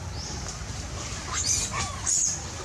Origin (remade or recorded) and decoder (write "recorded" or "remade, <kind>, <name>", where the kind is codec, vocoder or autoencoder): recorded